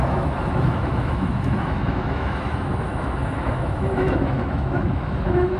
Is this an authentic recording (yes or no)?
no